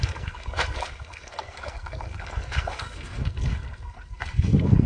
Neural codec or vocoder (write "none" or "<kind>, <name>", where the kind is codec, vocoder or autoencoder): codec, SNAC